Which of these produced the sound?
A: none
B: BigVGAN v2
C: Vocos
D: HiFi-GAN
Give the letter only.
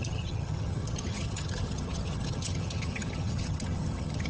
D